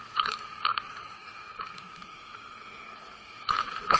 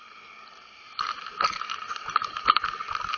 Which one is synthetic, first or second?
first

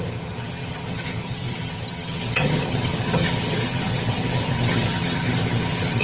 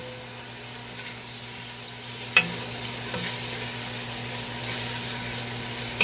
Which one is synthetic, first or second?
first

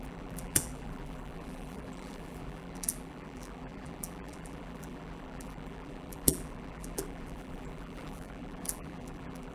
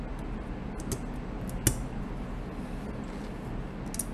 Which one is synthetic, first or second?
first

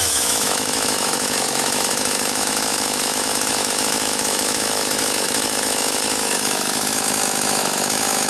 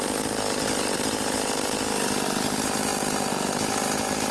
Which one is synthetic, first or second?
first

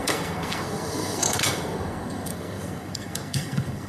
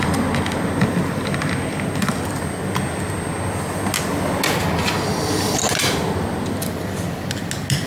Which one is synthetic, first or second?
first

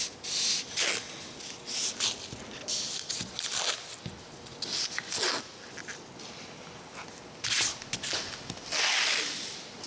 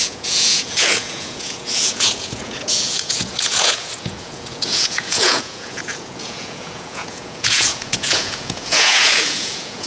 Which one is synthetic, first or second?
second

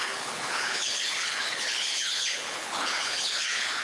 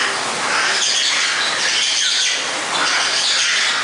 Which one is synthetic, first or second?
first